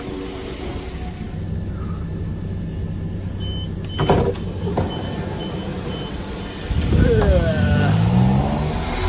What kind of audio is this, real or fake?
real